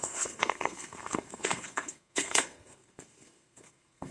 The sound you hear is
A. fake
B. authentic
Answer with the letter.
A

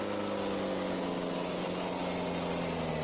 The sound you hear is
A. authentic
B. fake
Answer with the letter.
A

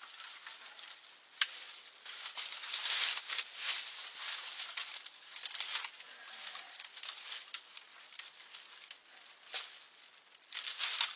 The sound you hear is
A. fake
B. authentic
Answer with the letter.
B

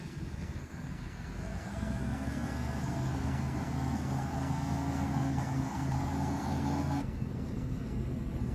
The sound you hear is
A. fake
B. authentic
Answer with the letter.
A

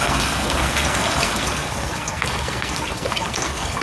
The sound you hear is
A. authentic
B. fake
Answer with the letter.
B